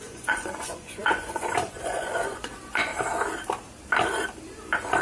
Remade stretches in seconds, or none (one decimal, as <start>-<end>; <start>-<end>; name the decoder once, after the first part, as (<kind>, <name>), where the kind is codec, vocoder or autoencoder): 0.0-2.9 (vocoder, Vocos)